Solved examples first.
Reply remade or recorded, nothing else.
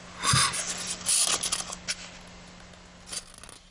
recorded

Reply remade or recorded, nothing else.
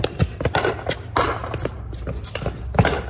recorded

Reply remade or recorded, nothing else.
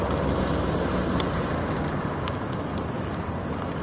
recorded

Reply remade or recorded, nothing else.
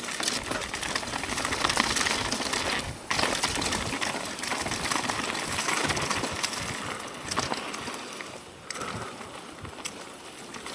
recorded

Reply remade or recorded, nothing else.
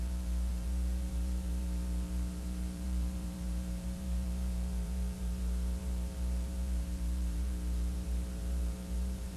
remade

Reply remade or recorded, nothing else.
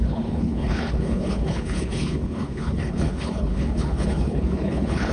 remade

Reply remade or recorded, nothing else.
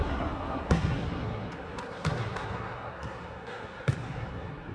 remade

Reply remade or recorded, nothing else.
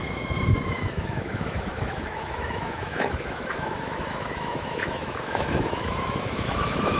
remade